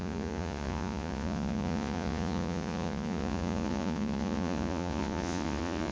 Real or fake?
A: fake